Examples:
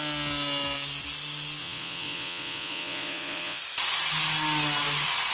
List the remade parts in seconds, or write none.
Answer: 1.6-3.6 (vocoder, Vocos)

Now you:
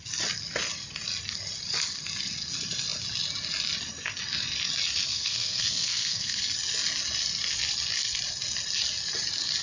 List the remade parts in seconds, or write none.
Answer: 5.1-6.4 (codec, SNAC)

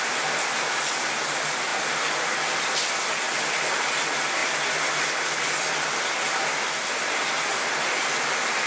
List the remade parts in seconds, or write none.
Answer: none

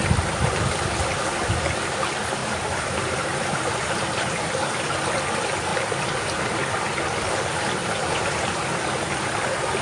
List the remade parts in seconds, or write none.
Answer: 0.0-0.6 (vocoder, BigVGAN v2); 2.4-4.9; 5.7-6.7; 7.8-8.4

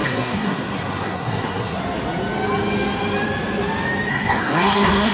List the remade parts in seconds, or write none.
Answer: 0.0-1.8 (codec, SNAC); 4.1-5.1

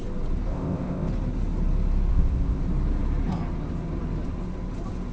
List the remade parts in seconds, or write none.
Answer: 0.5-1.1 (codec, ZipCodec); 2.1-2.6

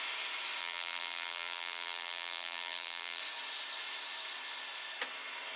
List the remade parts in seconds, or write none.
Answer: 0.6-3.2 (vocoder, BigVGAN v2)

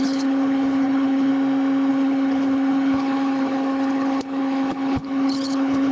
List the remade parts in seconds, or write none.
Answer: 0.0-1.3 (codec, HILCodec); 1.9-5.9